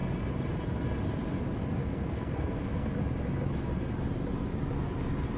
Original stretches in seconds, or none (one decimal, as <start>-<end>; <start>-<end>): 0.0-1.8; 2.9-5.4